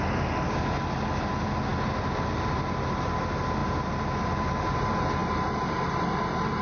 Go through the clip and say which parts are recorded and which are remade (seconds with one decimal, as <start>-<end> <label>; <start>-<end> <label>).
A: 0.0-6.6 recorded